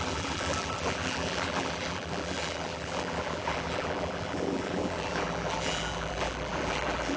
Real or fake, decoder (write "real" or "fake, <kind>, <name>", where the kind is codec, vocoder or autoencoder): fake, vocoder, BigVGAN v2